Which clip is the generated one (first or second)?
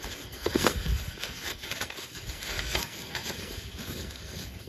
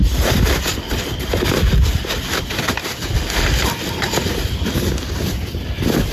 first